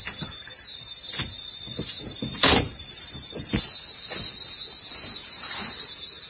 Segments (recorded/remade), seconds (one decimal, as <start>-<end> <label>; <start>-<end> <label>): 0.0-6.3 recorded